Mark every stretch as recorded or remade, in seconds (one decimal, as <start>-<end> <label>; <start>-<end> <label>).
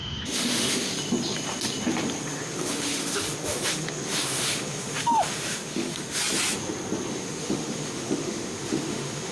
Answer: 0.0-0.9 remade; 0.9-2.2 recorded; 2.2-6.2 remade; 6.2-7.1 recorded; 7.1-9.3 remade